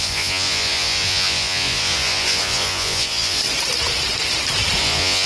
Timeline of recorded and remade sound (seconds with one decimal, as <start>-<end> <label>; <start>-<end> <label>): 0.0-3.4 remade; 3.4-4.8 recorded; 4.8-5.3 remade